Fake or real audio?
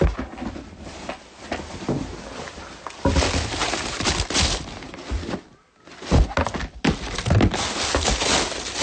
real